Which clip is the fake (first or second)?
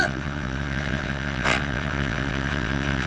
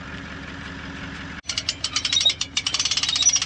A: first